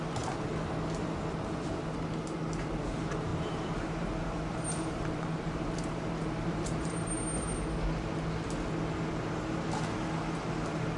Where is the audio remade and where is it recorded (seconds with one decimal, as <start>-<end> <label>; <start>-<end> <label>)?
0.0-3.3 recorded; 3.3-7.1 remade; 7.1-11.0 recorded